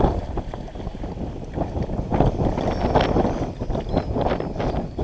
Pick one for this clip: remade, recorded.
recorded